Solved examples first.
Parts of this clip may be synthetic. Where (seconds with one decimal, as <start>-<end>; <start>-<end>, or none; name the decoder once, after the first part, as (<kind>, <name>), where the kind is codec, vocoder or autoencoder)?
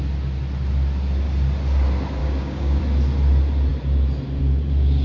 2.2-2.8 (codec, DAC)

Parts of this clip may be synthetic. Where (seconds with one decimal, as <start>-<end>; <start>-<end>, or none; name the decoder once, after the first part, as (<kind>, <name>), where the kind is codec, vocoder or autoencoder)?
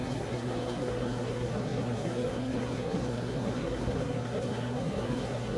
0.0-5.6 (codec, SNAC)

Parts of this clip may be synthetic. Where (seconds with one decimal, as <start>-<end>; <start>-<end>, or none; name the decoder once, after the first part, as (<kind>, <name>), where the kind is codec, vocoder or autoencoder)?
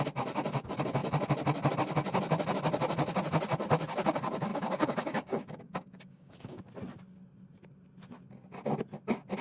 4.5-6.6 (codec, DAC)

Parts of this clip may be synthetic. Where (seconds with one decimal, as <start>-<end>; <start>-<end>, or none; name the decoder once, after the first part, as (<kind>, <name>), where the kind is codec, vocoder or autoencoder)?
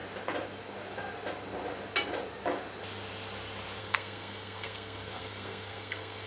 3.8-6.3 (codec, SNAC)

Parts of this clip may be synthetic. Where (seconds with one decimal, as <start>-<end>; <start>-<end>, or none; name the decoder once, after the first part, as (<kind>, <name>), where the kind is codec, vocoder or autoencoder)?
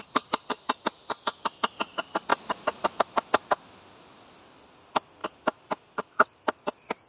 0.0-2.3 (vocoder, BigVGAN v2); 3.0-7.1